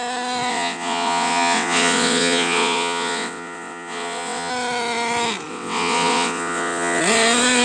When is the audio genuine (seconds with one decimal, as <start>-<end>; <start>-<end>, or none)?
0.0-0.5; 4.5-5.5; 7.0-7.6